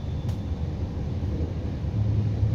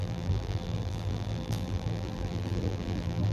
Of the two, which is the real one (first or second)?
first